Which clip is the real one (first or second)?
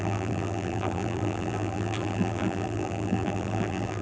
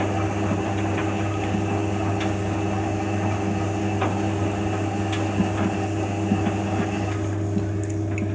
second